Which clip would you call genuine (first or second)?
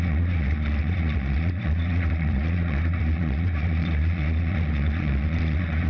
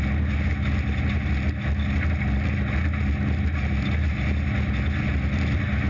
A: second